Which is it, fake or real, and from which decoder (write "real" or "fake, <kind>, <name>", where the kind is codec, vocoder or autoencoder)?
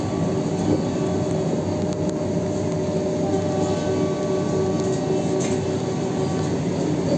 real